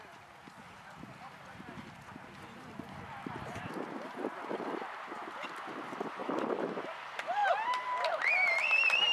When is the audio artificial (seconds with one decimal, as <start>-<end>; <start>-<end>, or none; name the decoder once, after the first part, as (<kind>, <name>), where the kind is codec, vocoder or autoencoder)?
none

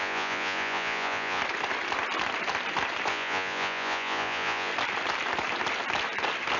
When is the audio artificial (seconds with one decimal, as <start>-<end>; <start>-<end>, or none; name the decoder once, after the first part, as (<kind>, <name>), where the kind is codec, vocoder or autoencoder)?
0.0-1.4 (vocoder, Vocos); 3.1-4.7